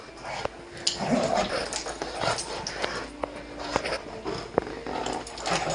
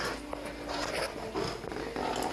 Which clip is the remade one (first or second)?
second